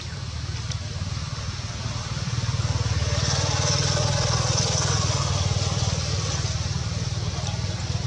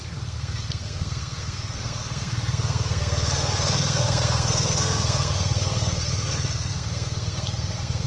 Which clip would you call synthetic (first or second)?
second